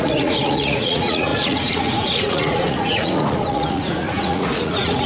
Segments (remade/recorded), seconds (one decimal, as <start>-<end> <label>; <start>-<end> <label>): 0.0-5.1 remade